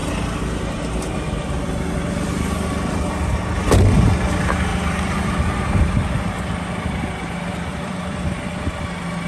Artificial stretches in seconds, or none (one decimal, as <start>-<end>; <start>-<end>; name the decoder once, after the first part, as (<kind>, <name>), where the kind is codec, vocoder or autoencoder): 4.7-5.3 (vocoder, BigVGAN v2); 7.7-8.5

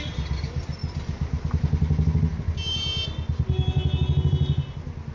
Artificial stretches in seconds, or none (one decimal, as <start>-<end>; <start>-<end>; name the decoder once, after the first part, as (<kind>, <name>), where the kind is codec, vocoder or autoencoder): none

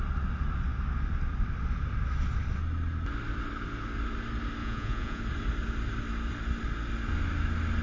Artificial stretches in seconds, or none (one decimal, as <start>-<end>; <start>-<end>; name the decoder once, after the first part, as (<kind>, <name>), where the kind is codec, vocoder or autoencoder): 4.6-5.2 (vocoder, Vocos)

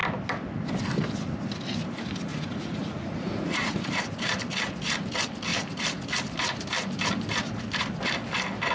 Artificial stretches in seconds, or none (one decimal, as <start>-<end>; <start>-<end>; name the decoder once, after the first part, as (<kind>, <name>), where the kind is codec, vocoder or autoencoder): 2.3-4.0 (vocoder, Vocos)

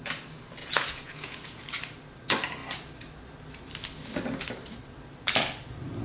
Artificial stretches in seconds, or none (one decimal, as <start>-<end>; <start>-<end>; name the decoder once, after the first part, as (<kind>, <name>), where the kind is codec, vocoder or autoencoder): 0.6-1.6 (vocoder, Vocos)

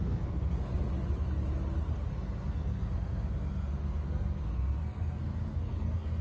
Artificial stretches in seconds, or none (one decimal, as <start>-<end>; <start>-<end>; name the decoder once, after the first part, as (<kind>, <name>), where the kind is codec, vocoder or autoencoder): 0.0-0.7 (codec, SNAC); 2.1-6.2